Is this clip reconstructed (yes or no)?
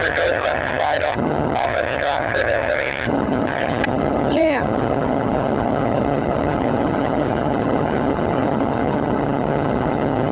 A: yes